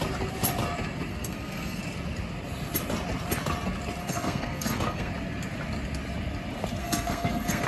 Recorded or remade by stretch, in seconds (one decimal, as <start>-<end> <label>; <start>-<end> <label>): 0.0-1.1 recorded; 1.1-1.8 remade; 1.8-4.0 recorded; 4.0-5.1 remade; 5.1-6.8 recorded; 6.8-7.7 remade

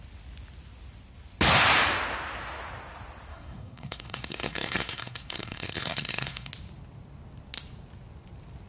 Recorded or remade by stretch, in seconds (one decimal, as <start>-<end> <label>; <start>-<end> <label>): 0.0-3.3 recorded; 3.3-6.5 remade; 6.5-8.7 recorded

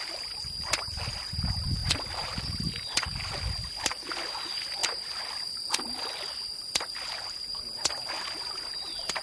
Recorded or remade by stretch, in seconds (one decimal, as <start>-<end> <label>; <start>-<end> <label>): 0.0-9.2 recorded

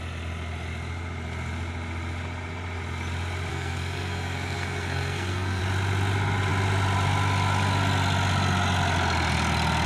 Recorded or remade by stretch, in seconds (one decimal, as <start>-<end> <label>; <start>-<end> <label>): 0.0-3.5 recorded; 3.5-5.6 remade; 5.6-9.9 recorded

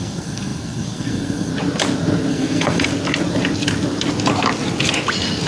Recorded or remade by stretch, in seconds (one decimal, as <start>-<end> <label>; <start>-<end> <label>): 0.0-1.5 remade; 1.5-2.3 recorded; 2.3-2.9 remade; 2.9-5.5 recorded